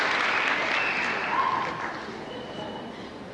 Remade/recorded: recorded